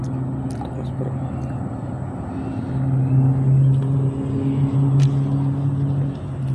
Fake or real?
real